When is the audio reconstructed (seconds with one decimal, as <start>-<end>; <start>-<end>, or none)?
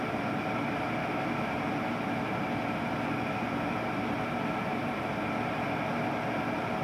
1.0-1.5